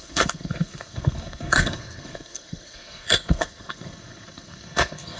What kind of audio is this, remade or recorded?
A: remade